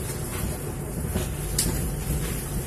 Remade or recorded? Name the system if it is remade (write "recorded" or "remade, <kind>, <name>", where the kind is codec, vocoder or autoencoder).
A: recorded